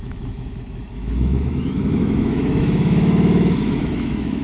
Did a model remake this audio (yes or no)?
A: yes